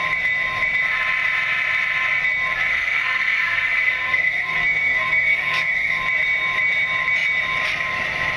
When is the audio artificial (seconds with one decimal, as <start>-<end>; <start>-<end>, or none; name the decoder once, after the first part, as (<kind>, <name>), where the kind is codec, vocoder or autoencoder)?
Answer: 2.7-6.0 (codec, SNAC)